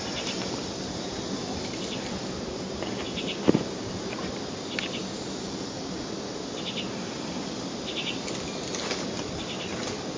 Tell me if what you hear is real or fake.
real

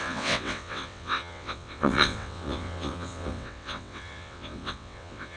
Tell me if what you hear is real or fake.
fake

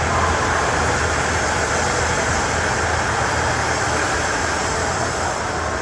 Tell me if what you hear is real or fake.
real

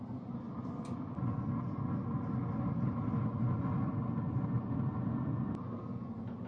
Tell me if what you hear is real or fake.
real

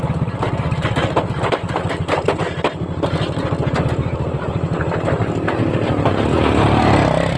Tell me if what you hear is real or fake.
real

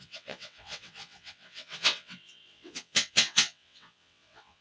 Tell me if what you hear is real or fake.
fake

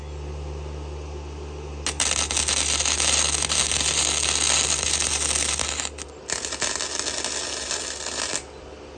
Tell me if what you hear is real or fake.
real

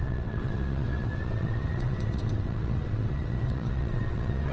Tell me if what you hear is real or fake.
fake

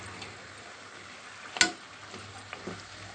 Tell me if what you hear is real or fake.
real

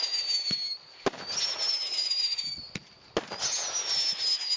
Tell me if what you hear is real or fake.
real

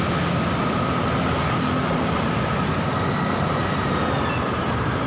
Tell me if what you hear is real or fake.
real